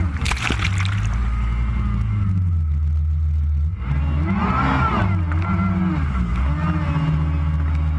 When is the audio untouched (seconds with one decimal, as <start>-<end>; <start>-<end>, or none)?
0.0-8.0